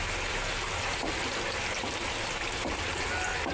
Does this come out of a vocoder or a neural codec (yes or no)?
no